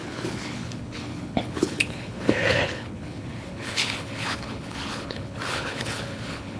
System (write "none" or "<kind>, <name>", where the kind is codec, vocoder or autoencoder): codec, HILCodec